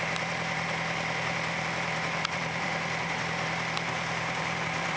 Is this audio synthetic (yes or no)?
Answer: yes